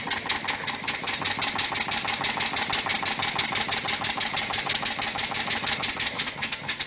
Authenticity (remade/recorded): recorded